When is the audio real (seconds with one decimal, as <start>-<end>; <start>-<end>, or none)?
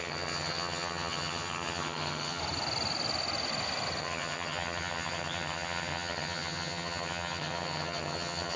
2.4-4.0